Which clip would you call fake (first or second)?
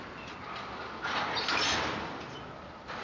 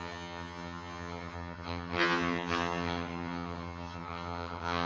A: second